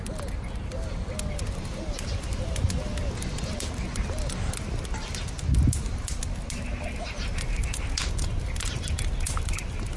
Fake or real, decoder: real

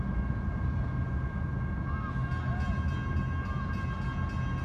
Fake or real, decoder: real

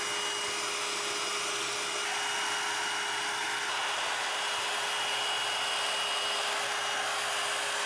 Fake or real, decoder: real